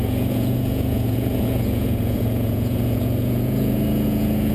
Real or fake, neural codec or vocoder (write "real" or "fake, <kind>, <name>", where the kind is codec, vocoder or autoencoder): fake, vocoder, Vocos